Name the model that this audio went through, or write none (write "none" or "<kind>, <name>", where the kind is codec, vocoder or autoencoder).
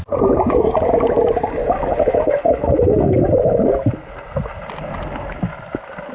none